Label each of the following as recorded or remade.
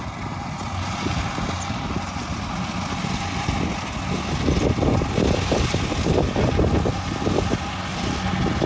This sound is recorded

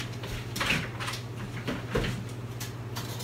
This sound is recorded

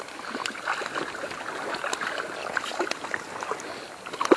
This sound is recorded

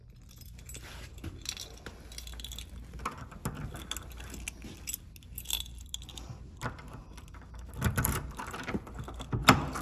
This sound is recorded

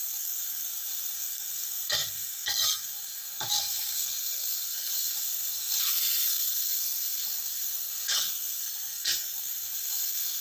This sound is remade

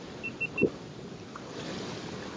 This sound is recorded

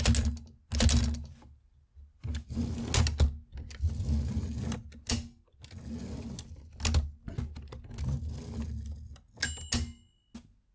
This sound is recorded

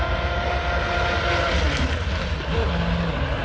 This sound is recorded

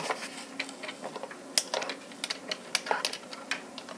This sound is recorded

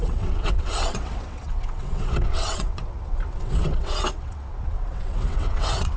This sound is remade